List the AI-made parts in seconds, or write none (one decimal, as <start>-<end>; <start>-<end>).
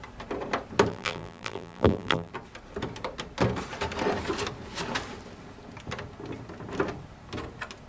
0.9-2.3